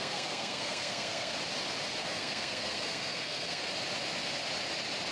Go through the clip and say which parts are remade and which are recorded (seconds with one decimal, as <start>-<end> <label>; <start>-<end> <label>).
0.0-1.3 remade; 1.3-2.0 recorded; 2.0-3.6 remade; 3.6-5.1 recorded